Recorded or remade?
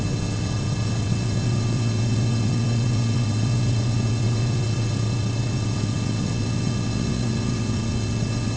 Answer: remade